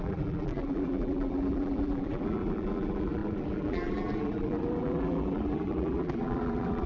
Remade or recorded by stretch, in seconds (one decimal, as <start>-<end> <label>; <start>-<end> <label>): 0.0-6.9 remade